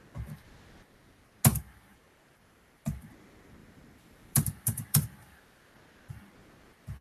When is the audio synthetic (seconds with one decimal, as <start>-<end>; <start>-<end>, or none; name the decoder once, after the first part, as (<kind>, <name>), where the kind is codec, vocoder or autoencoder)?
1.5-3.1 (vocoder, BigVGAN v2); 3.6-5.6; 6.4-7.0